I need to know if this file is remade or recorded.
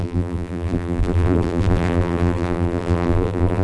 remade